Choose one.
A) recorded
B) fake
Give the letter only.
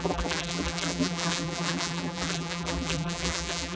B